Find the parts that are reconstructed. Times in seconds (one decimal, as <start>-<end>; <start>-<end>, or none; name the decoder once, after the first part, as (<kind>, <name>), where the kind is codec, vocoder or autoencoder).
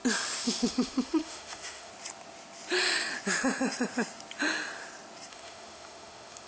0.7-1.9 (autoencoder, DAC-VAE); 5.3-6.5